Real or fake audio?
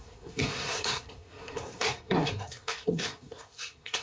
fake